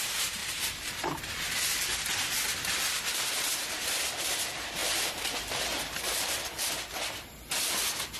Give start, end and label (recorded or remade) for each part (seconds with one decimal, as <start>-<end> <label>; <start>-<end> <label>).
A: 0.0-0.4 recorded; 0.4-1.2 remade; 1.2-4.8 recorded; 4.8-6.7 remade; 6.7-8.2 recorded